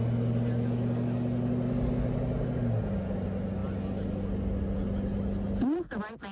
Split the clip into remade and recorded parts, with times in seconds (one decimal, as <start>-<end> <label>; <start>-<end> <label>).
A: 0.0-6.3 recorded